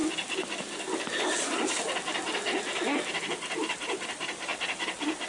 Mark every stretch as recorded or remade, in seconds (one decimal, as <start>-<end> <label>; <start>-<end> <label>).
0.0-3.2 recorded; 3.2-4.5 remade; 4.5-5.3 recorded